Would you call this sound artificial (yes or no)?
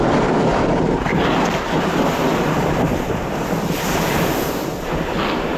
no